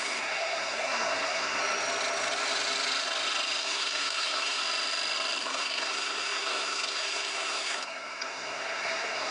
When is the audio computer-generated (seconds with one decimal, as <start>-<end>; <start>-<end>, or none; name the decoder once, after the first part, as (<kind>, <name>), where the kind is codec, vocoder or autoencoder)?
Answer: 0.0-1.6 (codec, SNAC); 3.6-4.6; 5.4-9.3